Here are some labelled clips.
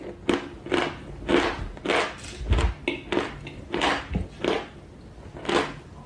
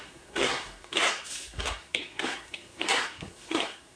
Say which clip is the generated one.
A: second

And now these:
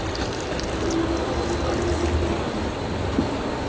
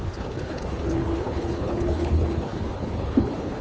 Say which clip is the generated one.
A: second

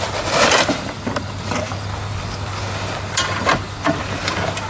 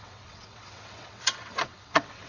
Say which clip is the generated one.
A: second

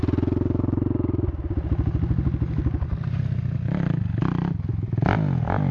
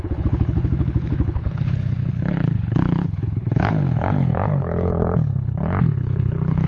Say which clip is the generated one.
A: second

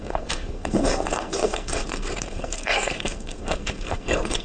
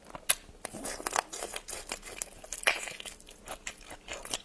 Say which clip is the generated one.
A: first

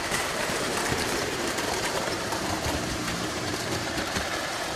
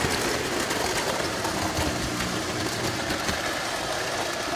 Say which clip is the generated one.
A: first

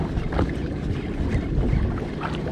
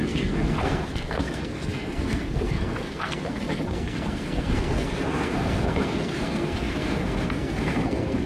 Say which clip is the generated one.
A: second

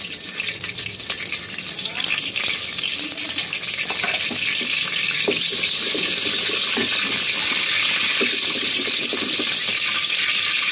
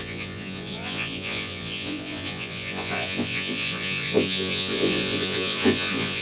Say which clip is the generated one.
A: second